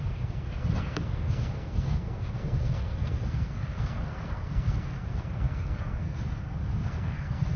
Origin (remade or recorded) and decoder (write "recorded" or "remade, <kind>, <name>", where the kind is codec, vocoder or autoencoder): remade, codec, SNAC